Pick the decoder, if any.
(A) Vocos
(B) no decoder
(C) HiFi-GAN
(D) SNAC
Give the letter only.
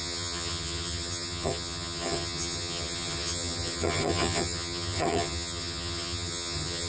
C